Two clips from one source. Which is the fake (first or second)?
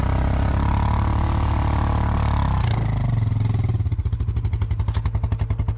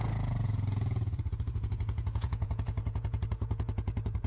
second